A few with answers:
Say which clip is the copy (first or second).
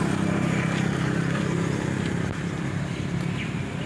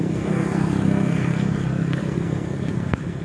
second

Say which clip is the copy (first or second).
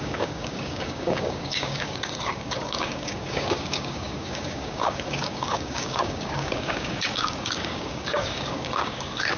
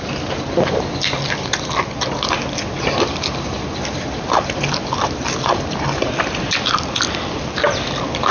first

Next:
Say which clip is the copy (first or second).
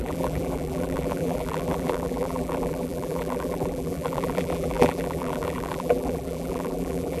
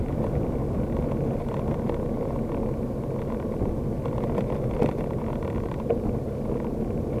first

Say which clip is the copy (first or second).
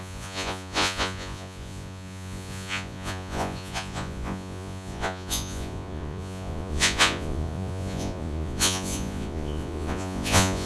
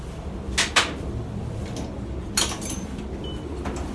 first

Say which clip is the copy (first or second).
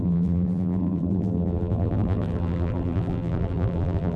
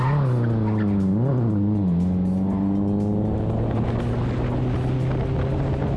first